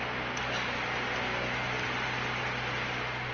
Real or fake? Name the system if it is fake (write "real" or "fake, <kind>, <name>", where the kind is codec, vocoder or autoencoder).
real